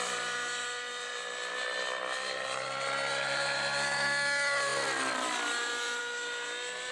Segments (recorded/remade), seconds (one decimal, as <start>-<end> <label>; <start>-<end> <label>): 0.0-6.9 recorded